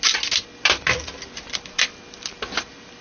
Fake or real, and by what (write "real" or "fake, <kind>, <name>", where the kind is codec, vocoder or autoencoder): real